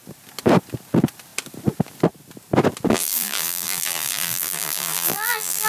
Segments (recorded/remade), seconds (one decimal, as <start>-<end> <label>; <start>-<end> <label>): 0.0-2.9 recorded; 2.9-5.7 remade